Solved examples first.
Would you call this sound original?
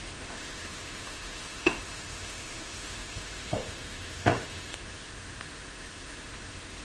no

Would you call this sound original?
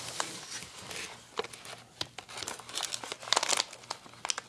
yes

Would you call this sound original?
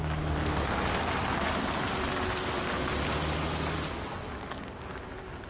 yes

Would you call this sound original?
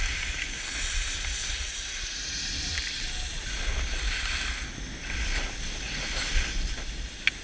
yes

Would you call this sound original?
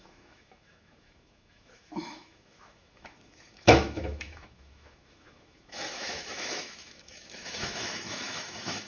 no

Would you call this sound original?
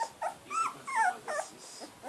yes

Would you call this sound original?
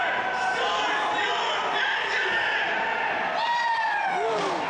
yes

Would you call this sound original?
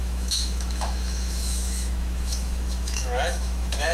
no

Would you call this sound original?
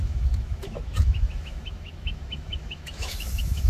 no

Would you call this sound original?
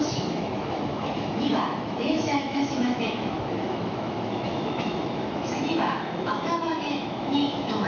no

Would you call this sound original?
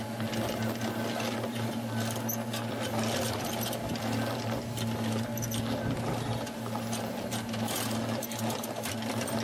yes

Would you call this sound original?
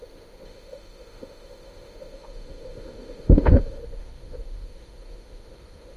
no